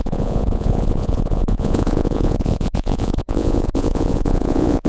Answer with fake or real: fake